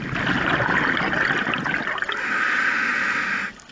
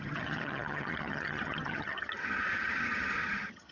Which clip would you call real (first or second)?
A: first